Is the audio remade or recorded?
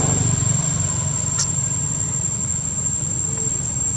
recorded